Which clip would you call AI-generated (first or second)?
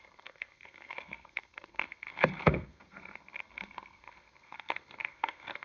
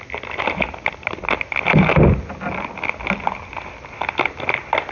first